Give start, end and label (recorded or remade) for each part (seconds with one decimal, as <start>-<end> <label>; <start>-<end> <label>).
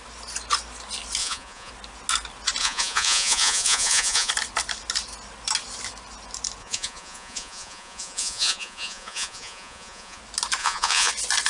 0.0-1.2 recorded; 1.2-1.7 remade; 1.7-2.6 recorded; 2.6-4.3 remade; 4.3-6.6 recorded; 6.6-10.2 remade; 10.2-10.6 recorded; 10.6-11.1 remade; 11.1-11.5 recorded